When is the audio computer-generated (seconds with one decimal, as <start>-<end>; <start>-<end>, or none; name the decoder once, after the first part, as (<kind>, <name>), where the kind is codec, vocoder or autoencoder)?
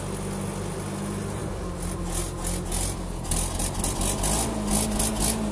none